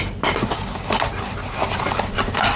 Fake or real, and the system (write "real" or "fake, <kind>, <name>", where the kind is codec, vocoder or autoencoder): real